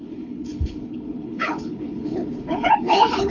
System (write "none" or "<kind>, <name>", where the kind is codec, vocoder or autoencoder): codec, HILCodec